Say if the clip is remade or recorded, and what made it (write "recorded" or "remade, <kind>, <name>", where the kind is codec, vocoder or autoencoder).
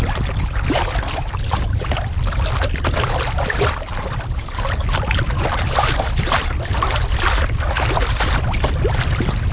recorded